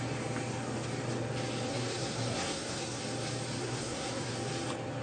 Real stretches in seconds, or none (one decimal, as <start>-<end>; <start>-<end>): 0.0-1.7; 3.0-3.6; 4.3-5.0